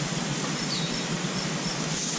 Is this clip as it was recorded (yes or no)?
yes